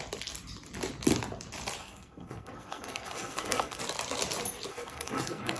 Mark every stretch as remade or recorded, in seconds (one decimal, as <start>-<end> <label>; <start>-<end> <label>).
0.0-1.8 recorded; 1.8-3.8 remade; 3.8-4.7 recorded; 4.7-5.6 remade